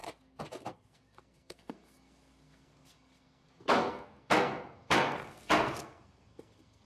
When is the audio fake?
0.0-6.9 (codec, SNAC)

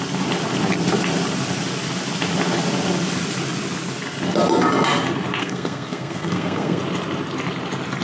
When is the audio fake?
5.4-6.8 (codec, SNAC)